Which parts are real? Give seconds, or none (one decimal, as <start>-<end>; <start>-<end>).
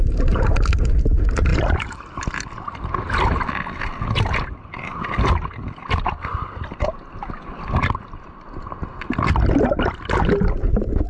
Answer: 0.0-11.1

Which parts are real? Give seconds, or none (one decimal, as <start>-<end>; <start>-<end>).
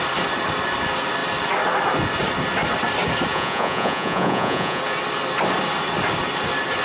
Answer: 0.0-3.3; 4.8-6.8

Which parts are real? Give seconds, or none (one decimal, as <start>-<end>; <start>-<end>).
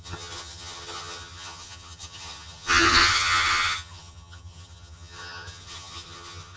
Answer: none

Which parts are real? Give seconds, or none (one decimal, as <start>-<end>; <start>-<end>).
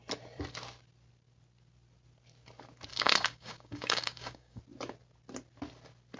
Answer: 0.0-2.9; 4.6-6.2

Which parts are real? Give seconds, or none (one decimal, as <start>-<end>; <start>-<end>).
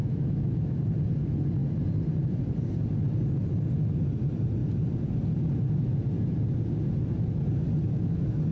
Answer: 0.8-8.5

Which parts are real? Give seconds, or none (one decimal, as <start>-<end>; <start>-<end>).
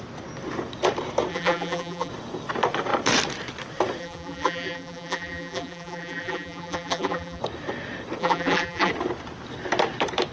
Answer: 0.0-1.3; 2.1-4.0; 7.4-8.2; 8.9-10.3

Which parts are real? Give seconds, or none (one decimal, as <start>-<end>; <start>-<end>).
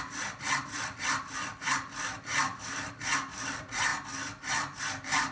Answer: 0.0-5.3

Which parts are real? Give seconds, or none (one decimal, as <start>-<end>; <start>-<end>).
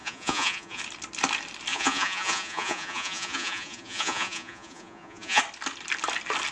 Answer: 0.8-1.7; 5.4-6.5